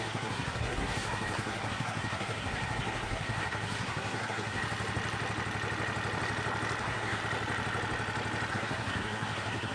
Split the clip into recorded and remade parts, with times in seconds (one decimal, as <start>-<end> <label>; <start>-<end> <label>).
0.0-4.6 remade; 4.6-6.8 recorded; 6.8-7.2 remade; 7.2-8.5 recorded; 8.5-9.7 remade